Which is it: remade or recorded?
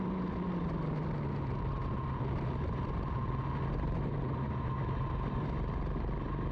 recorded